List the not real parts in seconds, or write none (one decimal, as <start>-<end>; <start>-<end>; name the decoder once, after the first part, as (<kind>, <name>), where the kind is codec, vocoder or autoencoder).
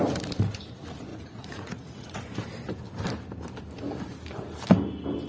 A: 1.1-2.2 (vocoder, Vocos)